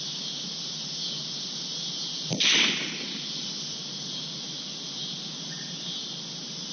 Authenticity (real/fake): real